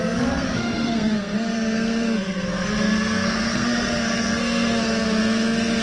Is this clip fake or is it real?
fake